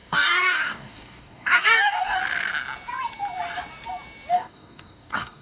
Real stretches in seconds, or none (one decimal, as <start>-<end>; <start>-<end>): 2.2-4.3